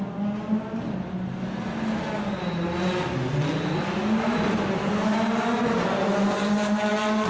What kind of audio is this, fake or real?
real